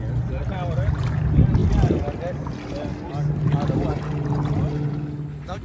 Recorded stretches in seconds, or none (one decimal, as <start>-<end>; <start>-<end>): 0.0-5.6